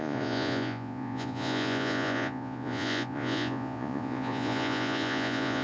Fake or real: fake